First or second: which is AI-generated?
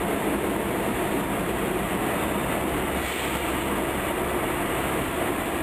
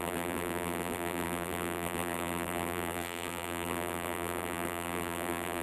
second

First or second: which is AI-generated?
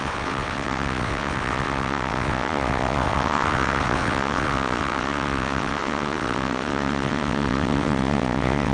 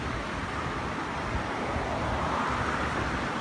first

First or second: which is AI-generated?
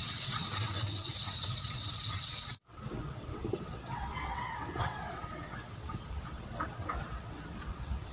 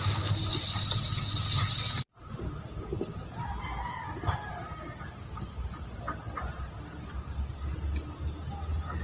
first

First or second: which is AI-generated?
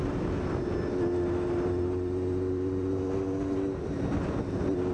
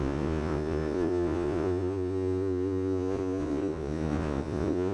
second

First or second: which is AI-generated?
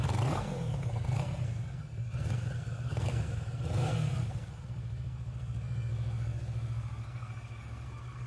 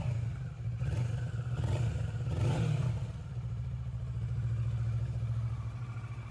first